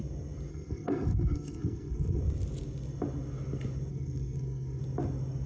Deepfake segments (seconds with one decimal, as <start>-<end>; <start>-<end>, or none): 0.5-2.2; 3.9-4.8